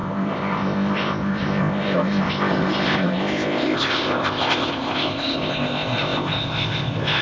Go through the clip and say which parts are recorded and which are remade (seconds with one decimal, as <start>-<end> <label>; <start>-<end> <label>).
0.0-7.2 remade